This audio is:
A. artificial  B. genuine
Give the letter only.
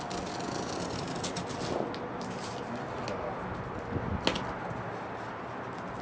B